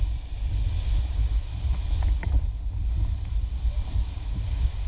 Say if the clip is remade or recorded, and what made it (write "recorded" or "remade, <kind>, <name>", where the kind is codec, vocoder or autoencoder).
remade, vocoder, BigVGAN v2